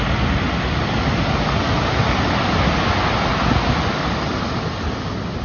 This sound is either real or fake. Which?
real